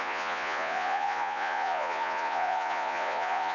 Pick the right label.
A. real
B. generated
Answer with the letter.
B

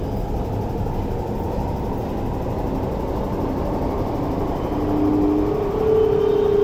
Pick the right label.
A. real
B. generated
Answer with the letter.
A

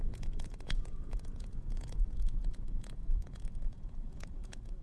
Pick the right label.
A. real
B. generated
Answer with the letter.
B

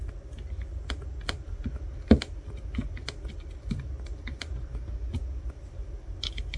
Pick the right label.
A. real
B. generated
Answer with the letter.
A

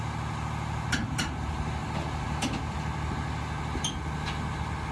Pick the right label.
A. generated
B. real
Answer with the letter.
B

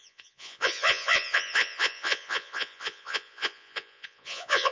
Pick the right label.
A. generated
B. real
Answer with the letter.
A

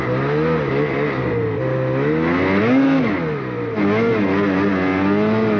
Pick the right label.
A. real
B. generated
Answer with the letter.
A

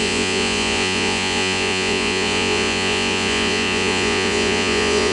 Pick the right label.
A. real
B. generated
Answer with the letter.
B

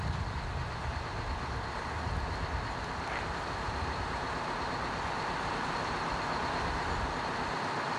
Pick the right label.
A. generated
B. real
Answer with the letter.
B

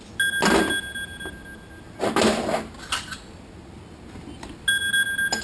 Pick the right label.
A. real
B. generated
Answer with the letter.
A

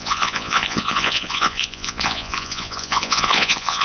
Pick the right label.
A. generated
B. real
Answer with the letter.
A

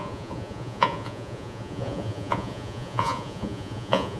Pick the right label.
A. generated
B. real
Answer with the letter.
A